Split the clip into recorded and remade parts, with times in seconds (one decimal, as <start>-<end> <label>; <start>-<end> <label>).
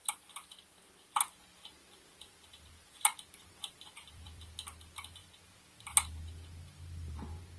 0.0-1.8 recorded; 1.8-3.0 remade; 3.0-3.4 recorded; 3.4-4.5 remade; 4.5-7.6 recorded